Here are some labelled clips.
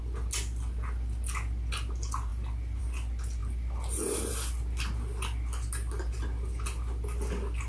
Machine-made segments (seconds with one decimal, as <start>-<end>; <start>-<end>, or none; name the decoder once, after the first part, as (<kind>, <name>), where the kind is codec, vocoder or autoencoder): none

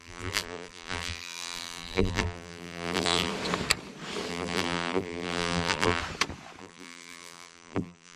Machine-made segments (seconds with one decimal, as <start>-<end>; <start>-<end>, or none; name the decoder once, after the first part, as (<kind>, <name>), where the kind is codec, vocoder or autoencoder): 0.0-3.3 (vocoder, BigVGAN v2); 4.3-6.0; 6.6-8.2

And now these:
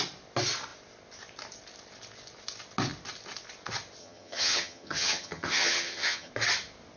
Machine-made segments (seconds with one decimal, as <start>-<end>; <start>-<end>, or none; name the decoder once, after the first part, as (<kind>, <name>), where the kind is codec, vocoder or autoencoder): 4.0-6.3 (vocoder, HiFi-GAN)

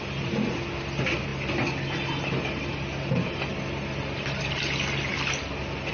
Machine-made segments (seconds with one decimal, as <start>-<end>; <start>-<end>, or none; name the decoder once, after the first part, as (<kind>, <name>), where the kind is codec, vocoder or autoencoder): none

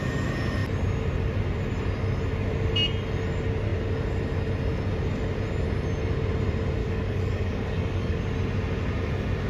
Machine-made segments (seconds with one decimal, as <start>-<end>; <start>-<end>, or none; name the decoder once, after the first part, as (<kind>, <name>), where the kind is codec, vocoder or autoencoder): 6.8-8.2 (codec, DAC)

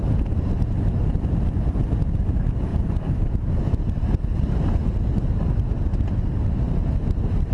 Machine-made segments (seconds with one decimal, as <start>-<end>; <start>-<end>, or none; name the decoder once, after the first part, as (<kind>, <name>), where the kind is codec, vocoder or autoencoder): 2.7-3.3 (vocoder, BigVGAN v2)

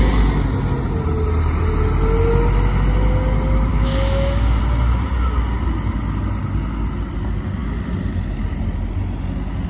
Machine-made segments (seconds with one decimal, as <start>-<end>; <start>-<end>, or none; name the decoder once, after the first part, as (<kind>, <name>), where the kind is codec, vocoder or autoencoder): 3.7-4.6 (codec, DAC)

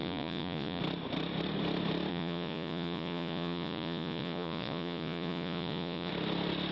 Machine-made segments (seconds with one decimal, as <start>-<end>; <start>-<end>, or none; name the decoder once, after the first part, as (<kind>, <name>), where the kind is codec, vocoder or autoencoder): 0.0-0.8 (vocoder, Vocos); 2.1-6.1